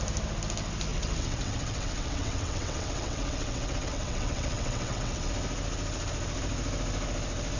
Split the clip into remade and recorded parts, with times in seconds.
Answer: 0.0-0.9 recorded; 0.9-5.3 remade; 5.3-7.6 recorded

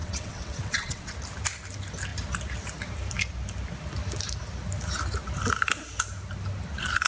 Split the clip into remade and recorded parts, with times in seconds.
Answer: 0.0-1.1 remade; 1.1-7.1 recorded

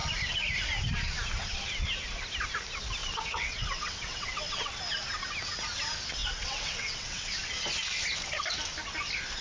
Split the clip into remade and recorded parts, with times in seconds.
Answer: 0.0-3.0 recorded; 3.0-4.7 remade; 4.7-6.2 recorded; 6.2-7.3 remade; 7.3-9.4 recorded

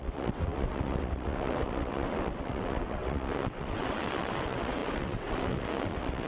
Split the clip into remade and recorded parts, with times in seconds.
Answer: 0.0-6.3 remade

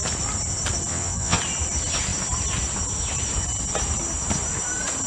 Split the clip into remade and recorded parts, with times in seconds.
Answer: 0.0-0.9 recorded; 0.9-1.4 remade; 1.4-5.1 recorded

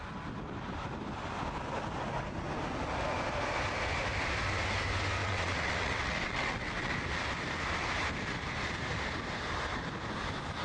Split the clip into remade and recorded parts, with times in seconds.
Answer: 0.0-5.2 recorded; 5.2-6.9 remade; 6.9-10.6 recorded

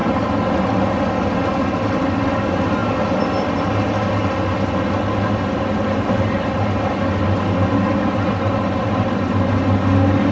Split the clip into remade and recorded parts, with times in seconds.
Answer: 0.0-10.3 recorded

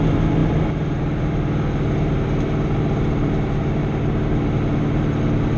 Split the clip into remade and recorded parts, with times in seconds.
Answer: 0.0-5.6 recorded